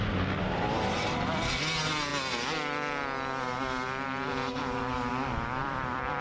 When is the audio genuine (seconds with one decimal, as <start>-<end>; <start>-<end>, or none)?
0.0-5.6